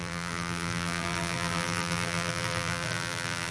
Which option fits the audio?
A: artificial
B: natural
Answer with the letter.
A